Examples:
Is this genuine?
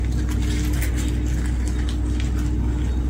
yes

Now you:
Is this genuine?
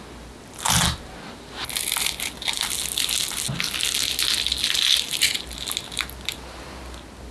yes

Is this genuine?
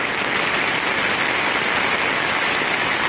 yes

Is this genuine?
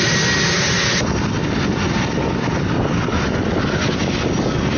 yes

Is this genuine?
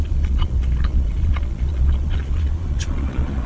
no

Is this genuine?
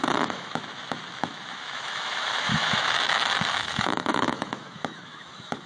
no